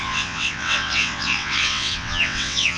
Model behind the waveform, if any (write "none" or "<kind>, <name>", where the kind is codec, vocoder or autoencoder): vocoder, WaveNeXt